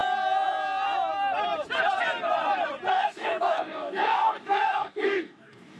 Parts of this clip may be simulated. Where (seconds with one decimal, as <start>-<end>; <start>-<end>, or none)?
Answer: 2.9-5.8

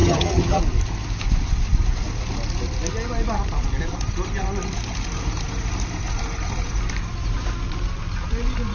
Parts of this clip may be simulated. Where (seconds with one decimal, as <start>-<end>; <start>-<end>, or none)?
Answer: 0.0-0.6

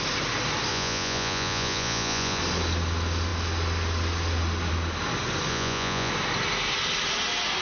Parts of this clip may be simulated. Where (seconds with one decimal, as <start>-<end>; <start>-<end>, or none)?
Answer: 0.7-2.4; 5.5-6.1

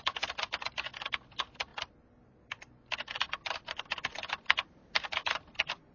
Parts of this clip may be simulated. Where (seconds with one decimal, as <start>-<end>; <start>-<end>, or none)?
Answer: none

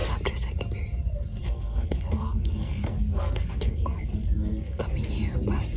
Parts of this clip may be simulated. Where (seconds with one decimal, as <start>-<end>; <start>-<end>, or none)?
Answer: 1.4-4.8